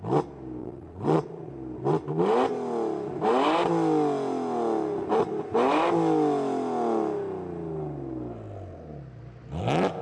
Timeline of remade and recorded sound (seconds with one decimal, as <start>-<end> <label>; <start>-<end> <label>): 0.0-0.6 recorded; 0.6-1.5 remade; 1.5-10.0 recorded